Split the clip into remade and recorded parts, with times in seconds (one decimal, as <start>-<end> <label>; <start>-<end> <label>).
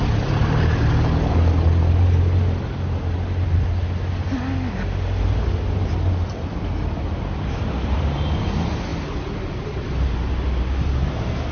0.0-11.5 recorded